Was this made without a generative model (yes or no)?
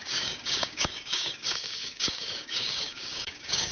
no